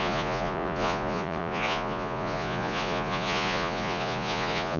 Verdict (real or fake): fake